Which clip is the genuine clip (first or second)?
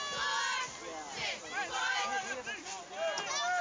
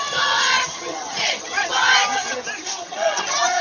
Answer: first